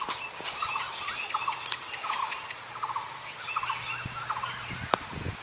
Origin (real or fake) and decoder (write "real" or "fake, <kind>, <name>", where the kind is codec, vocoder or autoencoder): real